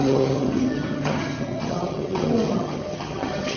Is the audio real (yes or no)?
no